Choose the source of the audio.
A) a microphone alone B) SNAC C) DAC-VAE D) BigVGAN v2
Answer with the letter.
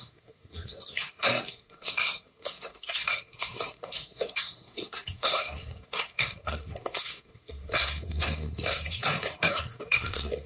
B